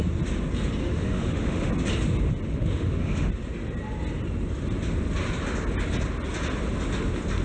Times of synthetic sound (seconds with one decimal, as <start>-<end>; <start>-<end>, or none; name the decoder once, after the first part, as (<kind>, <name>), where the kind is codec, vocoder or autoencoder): 0.8-1.7 (autoencoder, DAC-VAE); 2.5-3.3